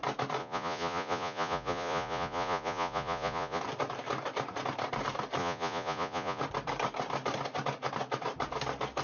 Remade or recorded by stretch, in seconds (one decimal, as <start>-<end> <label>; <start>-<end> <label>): 0.0-0.4 recorded; 0.4-3.6 remade; 3.6-5.4 recorded; 5.4-6.4 remade; 6.4-9.0 recorded